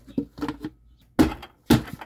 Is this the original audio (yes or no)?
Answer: yes